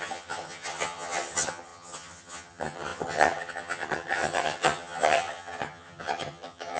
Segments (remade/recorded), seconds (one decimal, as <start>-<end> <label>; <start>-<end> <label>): 0.0-6.8 remade